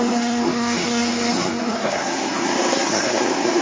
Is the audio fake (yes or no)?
yes